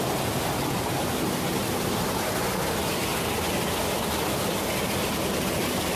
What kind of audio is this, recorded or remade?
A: recorded